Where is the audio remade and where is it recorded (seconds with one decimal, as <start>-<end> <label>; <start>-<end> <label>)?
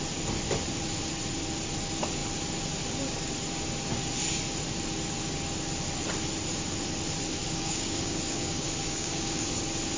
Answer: 0.0-7.4 recorded; 7.4-9.6 remade; 9.6-10.0 recorded